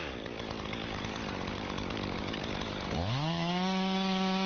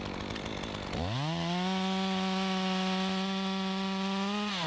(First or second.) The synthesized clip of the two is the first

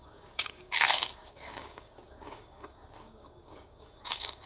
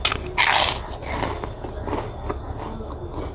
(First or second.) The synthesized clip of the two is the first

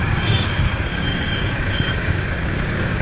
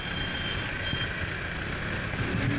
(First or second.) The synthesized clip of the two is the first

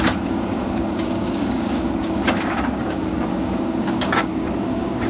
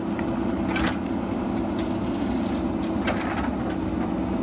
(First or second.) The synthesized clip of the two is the first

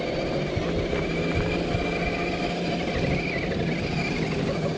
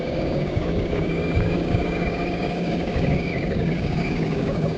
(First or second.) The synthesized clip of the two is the second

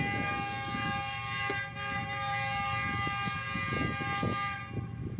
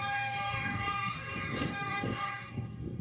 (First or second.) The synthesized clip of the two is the second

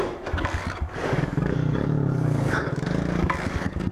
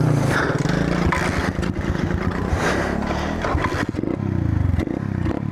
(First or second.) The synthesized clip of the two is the first